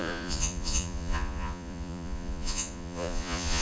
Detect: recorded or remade remade